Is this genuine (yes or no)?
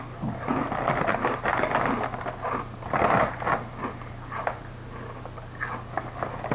yes